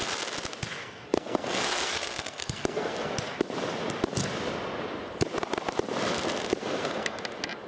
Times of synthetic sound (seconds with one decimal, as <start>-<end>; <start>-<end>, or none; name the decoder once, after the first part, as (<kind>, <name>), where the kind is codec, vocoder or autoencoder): 0.8-3.1 (codec, SNAC); 6.6-7.2